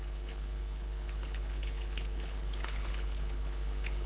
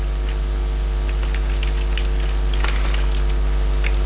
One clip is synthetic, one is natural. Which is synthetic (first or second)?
first